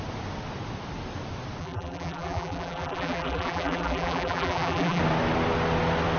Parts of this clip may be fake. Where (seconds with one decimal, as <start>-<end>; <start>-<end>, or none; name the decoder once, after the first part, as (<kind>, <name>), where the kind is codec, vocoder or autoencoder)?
1.6-5.0 (vocoder, BigVGAN v2)